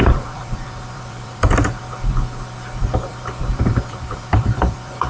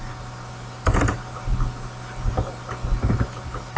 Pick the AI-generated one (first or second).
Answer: first